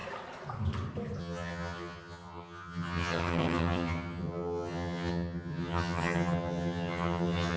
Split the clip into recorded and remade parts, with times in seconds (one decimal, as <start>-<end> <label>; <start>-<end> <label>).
0.0-1.2 recorded; 1.2-7.6 remade